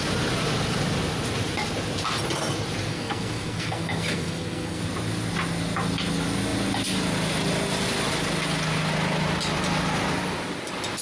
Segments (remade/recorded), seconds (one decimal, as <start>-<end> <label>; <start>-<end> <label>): 0.0-2.9 recorded; 2.9-4.8 remade; 4.8-11.0 recorded